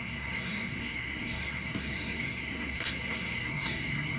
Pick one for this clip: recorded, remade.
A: remade